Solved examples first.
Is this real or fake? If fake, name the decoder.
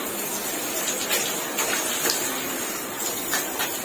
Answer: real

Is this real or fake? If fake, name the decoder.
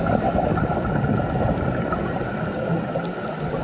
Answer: real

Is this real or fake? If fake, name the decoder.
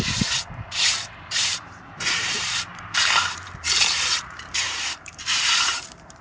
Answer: fake, vocoder, BigVGAN v2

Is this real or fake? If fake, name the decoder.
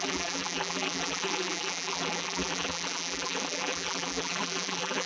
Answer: fake, vocoder, BigVGAN v2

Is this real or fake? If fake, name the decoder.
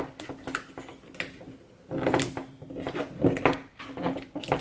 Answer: real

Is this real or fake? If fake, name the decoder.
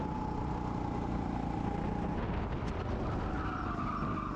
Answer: real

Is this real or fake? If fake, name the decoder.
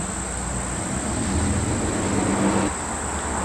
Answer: real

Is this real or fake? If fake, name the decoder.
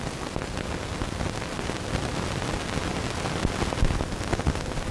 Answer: real